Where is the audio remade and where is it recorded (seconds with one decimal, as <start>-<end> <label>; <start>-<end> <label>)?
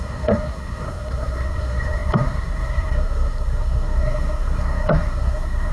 0.0-5.7 remade